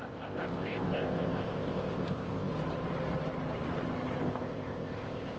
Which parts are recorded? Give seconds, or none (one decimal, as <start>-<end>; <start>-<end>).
2.5-4.2